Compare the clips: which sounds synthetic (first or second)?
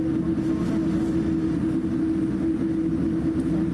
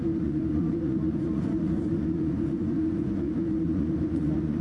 second